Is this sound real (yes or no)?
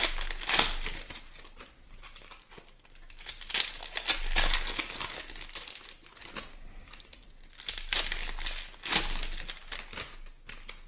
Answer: yes